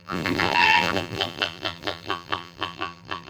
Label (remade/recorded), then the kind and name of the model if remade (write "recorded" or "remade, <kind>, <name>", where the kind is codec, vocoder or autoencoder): remade, vocoder, BigVGAN v2